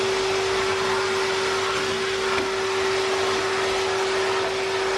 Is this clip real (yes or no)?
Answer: yes